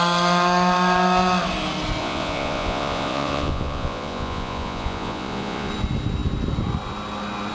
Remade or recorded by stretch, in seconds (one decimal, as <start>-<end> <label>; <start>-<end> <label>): 0.0-2.0 recorded; 2.0-5.7 remade; 5.7-7.5 recorded